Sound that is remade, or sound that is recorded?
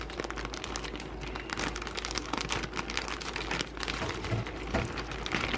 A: recorded